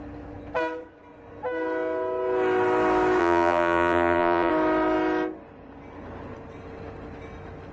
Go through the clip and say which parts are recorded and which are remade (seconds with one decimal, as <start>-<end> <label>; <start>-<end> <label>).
0.0-3.2 recorded; 3.2-4.5 remade; 4.5-7.7 recorded